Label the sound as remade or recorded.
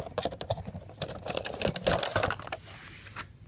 recorded